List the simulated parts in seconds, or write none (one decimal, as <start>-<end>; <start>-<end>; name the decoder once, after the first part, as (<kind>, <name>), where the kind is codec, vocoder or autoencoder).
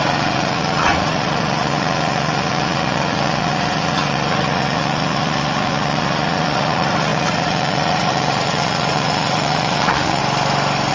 0.0-10.2 (vocoder, Vocos)